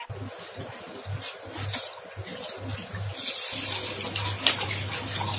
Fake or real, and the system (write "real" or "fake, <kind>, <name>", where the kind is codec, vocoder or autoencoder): real